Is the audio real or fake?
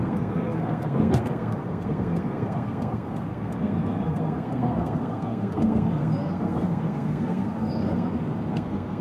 fake